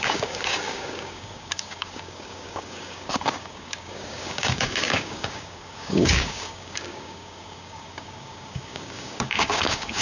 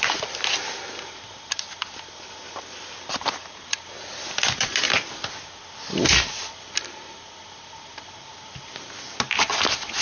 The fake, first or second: first